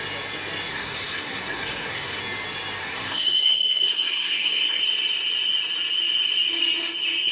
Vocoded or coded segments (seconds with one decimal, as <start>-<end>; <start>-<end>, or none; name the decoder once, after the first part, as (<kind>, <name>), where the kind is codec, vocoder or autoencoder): 0.7-2.2 (codec, SNAC); 2.8-4.8